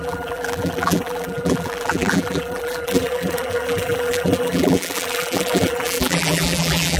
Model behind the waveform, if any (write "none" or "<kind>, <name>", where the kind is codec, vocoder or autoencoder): vocoder, BigVGAN v2